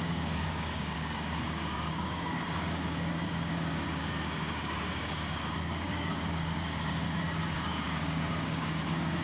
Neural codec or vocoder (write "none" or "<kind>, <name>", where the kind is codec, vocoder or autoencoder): codec, DAC